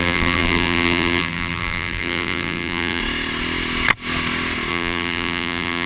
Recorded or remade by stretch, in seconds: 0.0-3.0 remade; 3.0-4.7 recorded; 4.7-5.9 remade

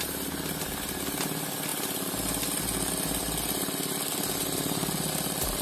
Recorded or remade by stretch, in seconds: 0.0-5.6 recorded

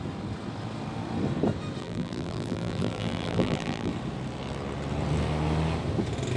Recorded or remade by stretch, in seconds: 0.0-1.8 recorded; 1.8-3.9 remade; 3.9-6.4 recorded

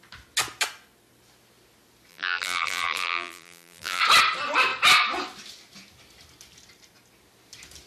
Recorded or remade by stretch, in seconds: 0.0-2.1 recorded; 2.1-4.0 remade; 4.0-7.9 recorded

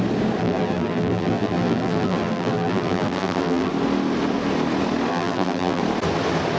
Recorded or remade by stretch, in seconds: 0.0-0.4 recorded; 0.4-3.7 remade; 3.7-5.1 recorded; 5.1-5.8 remade; 5.8-6.6 recorded

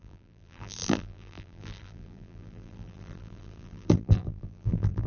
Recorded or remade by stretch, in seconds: 0.0-5.1 remade